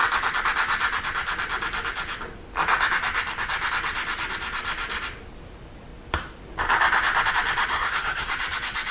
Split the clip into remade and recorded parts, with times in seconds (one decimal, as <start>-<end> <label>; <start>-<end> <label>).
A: 0.0-7.7 recorded; 7.7-8.3 remade; 8.3-8.9 recorded

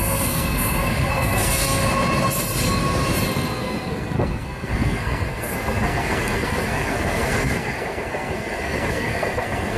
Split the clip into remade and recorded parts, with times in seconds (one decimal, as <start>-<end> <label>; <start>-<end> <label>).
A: 0.0-1.8 remade; 1.8-3.3 recorded; 3.3-9.8 remade

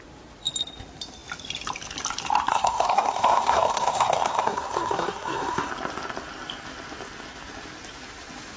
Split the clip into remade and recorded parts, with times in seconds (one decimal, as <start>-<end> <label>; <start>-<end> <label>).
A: 0.0-2.5 recorded; 2.5-5.7 remade; 5.7-8.6 recorded

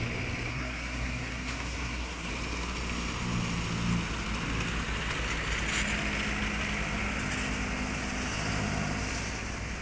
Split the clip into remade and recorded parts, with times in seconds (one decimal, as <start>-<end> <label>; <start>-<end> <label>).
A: 0.0-0.5 recorded; 0.5-2.3 remade; 2.3-9.8 recorded

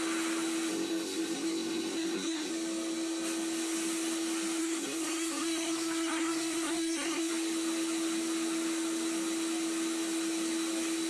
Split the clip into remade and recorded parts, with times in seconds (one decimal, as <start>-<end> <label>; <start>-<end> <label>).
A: 0.0-0.7 recorded; 0.7-2.5 remade; 2.5-4.6 recorded; 4.6-7.3 remade; 7.3-11.1 recorded

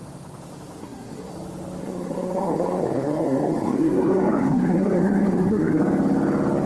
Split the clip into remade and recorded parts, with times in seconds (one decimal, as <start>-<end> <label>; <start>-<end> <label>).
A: 0.0-0.8 recorded; 0.8-1.3 remade; 1.3-1.8 recorded; 1.8-5.8 remade; 5.8-6.7 recorded